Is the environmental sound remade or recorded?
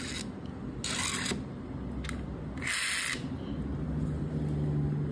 recorded